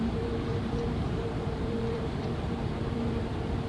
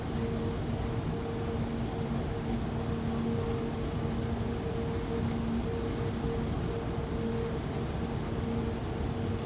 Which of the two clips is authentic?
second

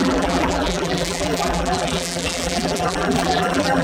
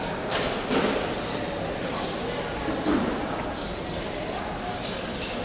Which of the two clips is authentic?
second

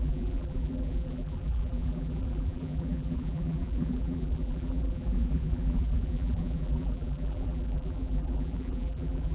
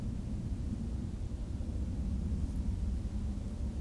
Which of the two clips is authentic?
second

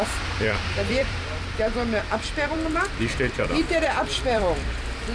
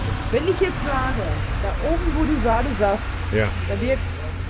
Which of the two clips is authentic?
second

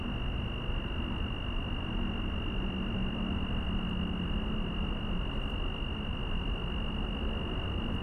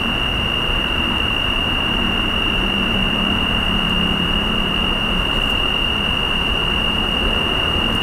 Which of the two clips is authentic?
first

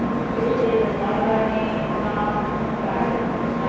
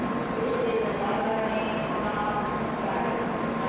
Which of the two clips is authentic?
first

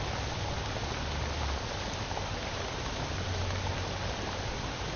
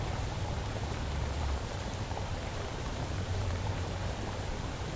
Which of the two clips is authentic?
first